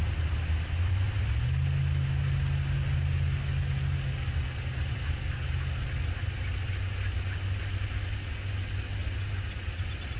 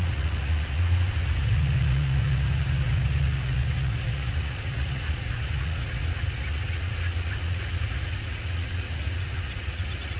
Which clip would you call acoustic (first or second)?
first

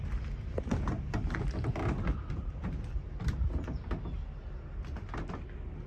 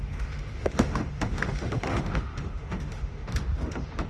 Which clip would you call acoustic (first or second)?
first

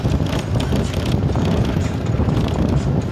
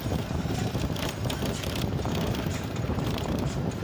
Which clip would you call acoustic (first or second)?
first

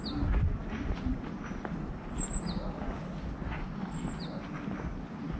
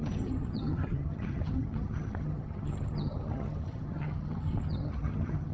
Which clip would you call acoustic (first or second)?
first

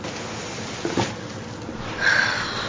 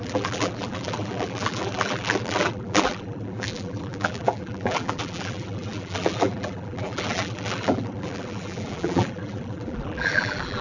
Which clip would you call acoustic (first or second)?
first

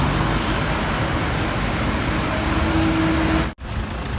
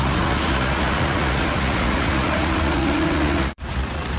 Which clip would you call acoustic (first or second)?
first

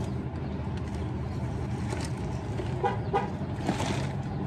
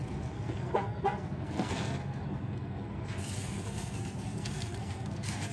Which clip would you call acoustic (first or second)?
first